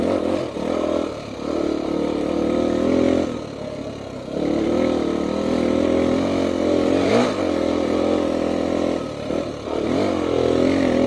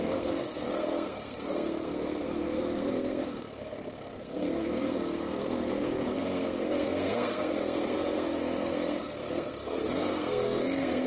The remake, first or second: second